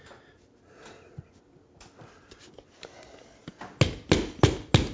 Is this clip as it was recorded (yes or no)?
yes